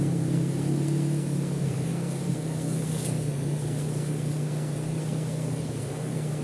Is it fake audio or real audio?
fake